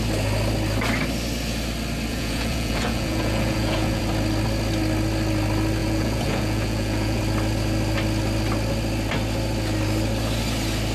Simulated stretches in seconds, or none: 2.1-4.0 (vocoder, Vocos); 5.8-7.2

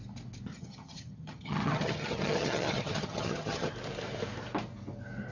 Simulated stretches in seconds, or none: 0.5-3.7 (vocoder, HiFi-GAN)

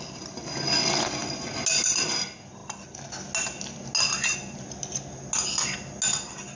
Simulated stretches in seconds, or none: none

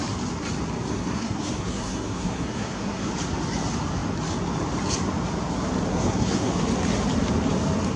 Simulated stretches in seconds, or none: 0.9-3.1 (codec, SNAC); 5.9-6.5

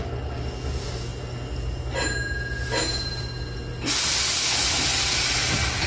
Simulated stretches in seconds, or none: none